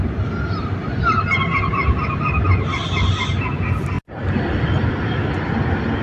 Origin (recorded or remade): recorded